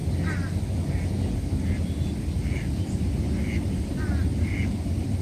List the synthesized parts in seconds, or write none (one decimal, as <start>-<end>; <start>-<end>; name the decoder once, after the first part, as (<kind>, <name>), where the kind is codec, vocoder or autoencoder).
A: none